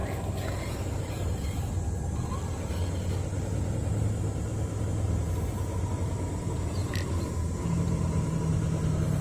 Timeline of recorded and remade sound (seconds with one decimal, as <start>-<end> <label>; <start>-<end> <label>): 0.0-6.8 recorded; 6.8-8.4 remade; 8.4-9.2 recorded